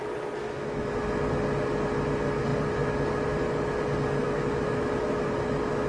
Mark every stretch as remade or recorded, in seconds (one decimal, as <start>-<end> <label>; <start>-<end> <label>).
0.0-0.4 recorded; 0.4-0.9 remade; 0.9-4.2 recorded; 4.2-5.2 remade; 5.2-5.9 recorded